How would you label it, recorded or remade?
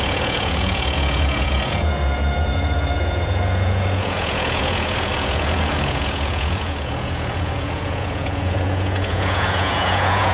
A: remade